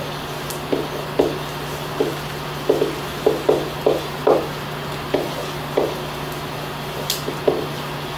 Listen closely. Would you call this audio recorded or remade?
recorded